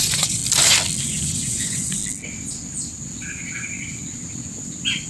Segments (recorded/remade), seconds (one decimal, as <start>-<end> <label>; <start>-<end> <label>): 0.0-0.4 remade; 0.4-1.0 recorded; 1.0-2.0 remade; 2.0-5.1 recorded